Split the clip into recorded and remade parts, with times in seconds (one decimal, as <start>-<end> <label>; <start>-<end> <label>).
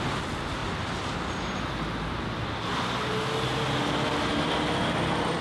0.0-5.4 recorded